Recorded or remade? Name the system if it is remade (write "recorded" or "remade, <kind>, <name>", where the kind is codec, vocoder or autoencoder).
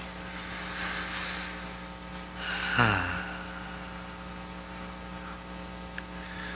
recorded